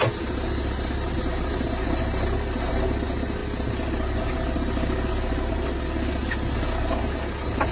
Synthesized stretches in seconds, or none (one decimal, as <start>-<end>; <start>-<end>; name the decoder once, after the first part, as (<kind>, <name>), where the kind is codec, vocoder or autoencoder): none